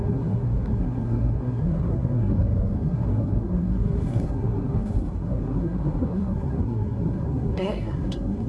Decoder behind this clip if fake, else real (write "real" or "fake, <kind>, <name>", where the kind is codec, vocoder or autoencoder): fake, codec, SNAC